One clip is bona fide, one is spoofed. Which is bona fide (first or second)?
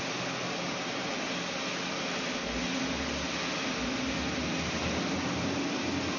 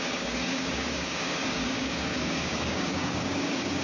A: first